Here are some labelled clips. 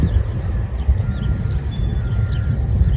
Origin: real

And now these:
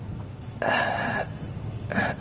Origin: real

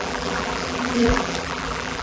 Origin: fake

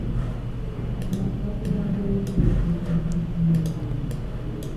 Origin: real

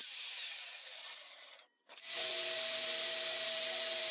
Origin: fake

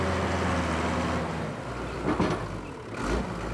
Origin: real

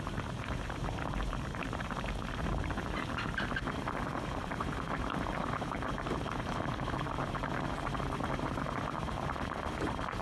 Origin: fake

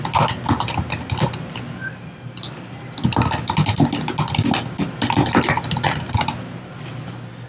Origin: real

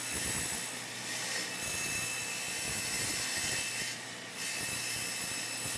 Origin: real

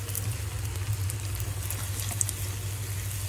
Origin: real